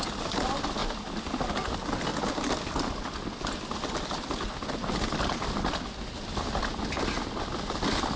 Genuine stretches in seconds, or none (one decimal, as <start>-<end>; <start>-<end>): 0.0-8.2